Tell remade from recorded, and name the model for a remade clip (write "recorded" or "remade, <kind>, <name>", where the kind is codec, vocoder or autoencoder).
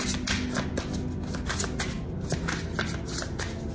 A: recorded